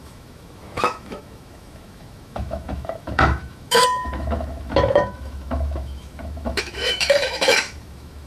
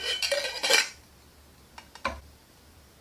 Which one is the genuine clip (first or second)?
second